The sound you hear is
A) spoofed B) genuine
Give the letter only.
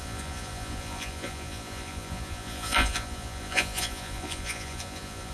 A